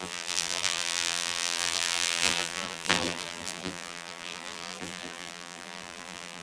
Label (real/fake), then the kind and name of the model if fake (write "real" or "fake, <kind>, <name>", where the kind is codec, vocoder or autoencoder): fake, vocoder, BigVGAN v2